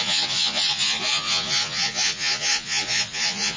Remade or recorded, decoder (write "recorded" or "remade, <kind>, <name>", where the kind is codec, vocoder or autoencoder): remade, vocoder, Vocos